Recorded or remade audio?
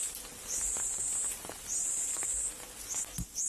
recorded